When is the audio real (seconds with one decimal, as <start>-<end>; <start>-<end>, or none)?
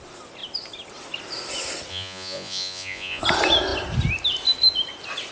0.0-1.9; 3.2-5.3